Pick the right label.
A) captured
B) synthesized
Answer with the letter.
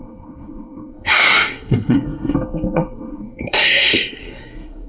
B